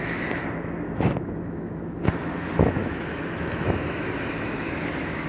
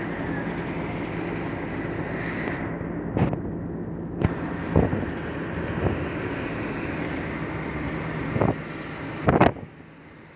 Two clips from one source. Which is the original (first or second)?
second